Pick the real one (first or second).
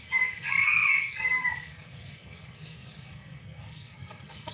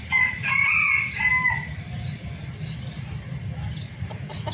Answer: second